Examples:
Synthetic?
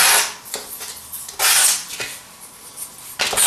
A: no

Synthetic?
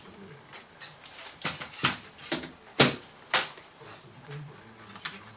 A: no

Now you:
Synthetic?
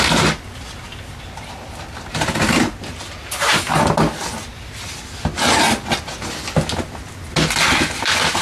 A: no